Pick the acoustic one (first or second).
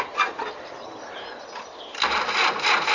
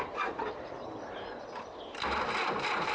first